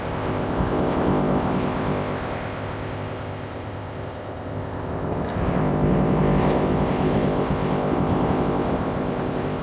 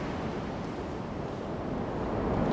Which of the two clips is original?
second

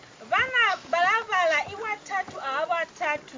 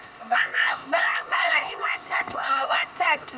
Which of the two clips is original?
first